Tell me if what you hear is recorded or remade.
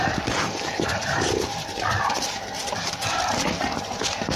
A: recorded